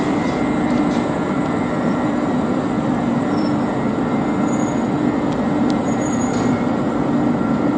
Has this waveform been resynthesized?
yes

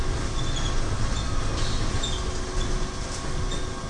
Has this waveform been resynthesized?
no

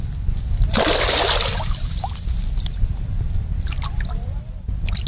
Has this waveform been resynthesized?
no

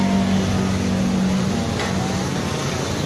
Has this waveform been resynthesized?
no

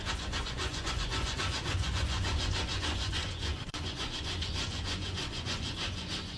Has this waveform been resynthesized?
yes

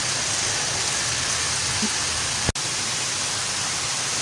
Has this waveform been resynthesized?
no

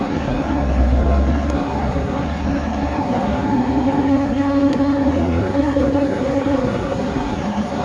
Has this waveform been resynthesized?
yes